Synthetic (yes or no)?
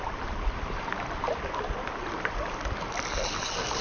no